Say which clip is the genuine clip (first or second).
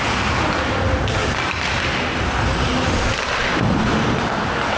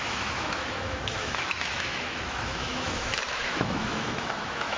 first